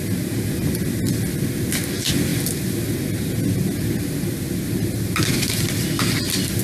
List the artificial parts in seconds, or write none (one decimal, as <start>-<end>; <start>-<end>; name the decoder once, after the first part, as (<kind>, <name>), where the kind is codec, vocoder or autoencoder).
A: none

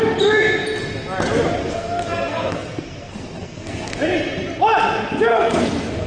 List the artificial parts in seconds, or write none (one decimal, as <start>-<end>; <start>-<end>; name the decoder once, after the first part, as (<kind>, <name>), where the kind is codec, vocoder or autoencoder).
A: 1.6-4.0 (codec, SNAC); 5.3-6.1

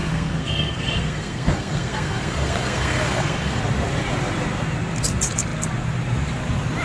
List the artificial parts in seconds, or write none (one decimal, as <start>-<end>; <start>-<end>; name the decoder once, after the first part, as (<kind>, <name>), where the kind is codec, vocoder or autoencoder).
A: 0.0-3.6 (codec, SNAC)

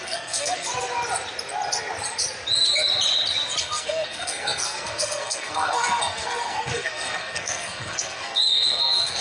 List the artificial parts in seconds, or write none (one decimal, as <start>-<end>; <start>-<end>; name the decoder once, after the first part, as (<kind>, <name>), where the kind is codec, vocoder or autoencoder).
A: 0.0-0.7 (codec, SNAC); 3.6-9.2